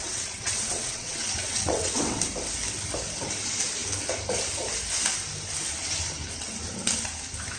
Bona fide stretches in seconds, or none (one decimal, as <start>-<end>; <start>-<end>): 2.2-7.6